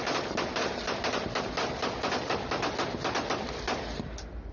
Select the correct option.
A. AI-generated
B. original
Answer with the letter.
B